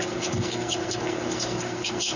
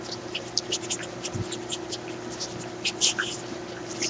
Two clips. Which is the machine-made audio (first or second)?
first